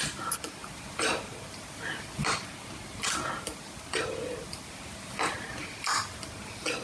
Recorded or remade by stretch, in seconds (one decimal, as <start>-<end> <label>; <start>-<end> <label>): 0.0-6.8 recorded